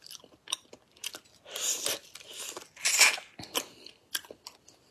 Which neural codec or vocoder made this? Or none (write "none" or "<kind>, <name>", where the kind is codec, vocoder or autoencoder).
none